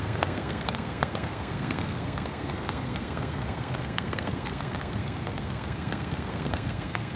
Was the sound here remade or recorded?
remade